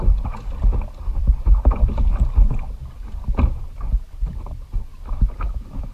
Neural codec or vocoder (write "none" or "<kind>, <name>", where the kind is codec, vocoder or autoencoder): none